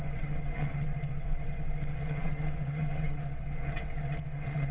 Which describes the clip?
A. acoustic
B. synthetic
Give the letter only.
B